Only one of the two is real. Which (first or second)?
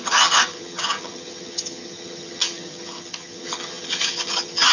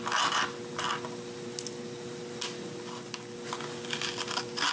second